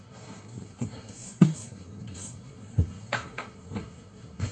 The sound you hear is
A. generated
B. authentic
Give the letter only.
A